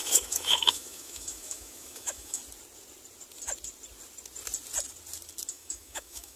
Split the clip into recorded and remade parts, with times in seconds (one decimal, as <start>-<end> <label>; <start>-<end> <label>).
0.0-2.4 remade; 2.4-5.5 recorded; 5.5-6.4 remade